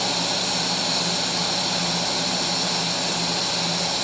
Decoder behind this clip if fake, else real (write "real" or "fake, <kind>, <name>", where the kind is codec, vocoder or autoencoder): real